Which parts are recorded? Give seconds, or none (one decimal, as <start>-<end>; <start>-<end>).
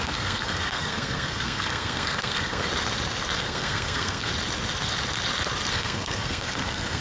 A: 2.7-3.4; 4.3-5.7